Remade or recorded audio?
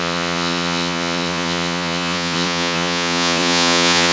remade